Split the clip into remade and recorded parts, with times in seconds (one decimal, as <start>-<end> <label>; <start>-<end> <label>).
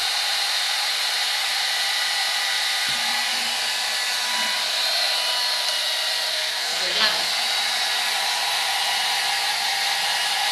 0.0-6.3 recorded; 6.3-7.3 remade; 7.3-10.5 recorded